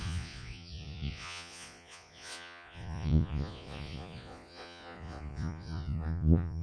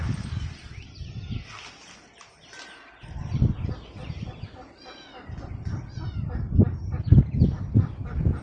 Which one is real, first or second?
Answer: second